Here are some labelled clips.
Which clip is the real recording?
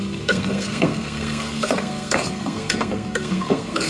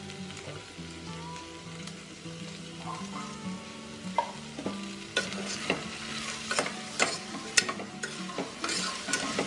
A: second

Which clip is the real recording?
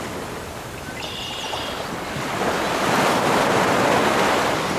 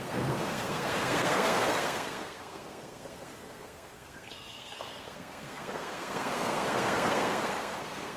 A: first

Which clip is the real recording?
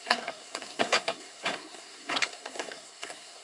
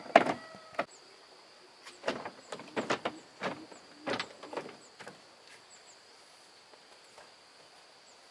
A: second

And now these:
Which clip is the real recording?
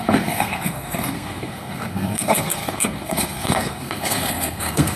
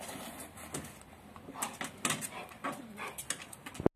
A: second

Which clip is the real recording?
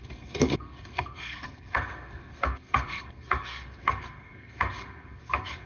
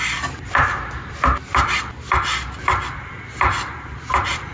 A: second